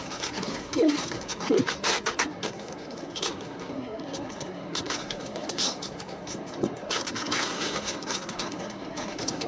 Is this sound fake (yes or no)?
yes